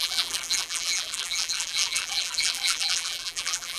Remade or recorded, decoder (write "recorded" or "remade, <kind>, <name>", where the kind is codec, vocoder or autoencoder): remade, vocoder, BigVGAN v2